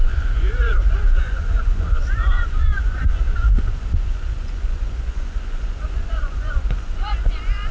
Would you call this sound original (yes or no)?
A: no